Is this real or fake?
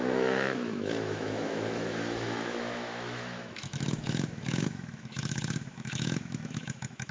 fake